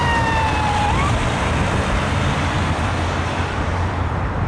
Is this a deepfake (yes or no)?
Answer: yes